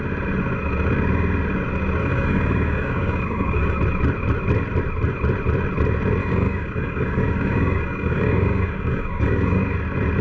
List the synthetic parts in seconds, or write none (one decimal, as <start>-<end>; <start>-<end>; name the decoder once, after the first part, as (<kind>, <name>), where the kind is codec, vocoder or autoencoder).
2.0-3.8 (codec, DAC); 6.2-9.6